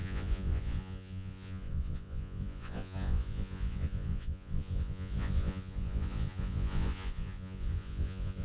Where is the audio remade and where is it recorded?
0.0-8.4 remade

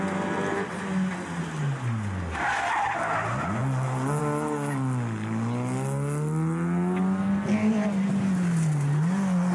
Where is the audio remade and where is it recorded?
0.0-9.5 recorded

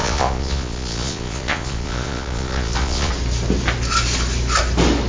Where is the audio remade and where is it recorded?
0.0-3.1 remade; 3.1-5.1 recorded

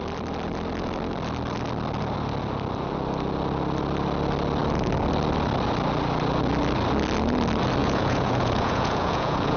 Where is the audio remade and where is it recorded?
0.0-7.8 recorded; 7.8-9.6 remade

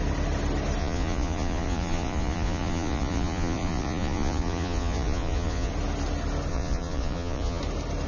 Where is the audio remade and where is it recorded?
0.0-0.8 recorded; 0.8-5.7 remade; 5.7-6.5 recorded; 6.5-7.6 remade; 7.6-8.1 recorded

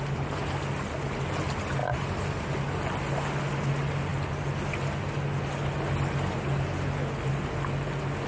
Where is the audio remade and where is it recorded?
0.0-8.3 recorded

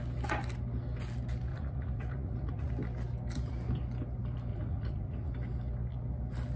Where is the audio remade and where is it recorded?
0.0-1.5 recorded; 1.5-2.7 remade; 2.7-4.5 recorded; 4.5-5.3 remade; 5.3-6.6 recorded